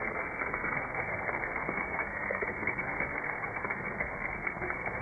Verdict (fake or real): fake